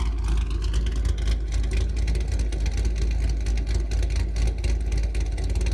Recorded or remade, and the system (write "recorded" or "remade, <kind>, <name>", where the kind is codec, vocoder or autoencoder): recorded